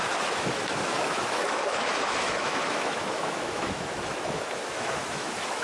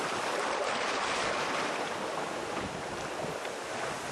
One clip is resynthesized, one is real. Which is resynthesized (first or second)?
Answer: first